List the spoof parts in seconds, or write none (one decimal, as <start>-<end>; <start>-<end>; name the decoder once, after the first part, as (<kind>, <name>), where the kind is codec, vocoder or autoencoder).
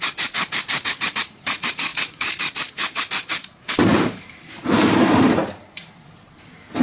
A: 0.0-6.8 (vocoder, BigVGAN v2)